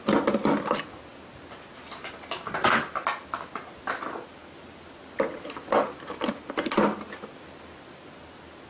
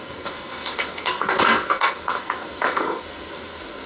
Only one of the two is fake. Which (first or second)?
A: second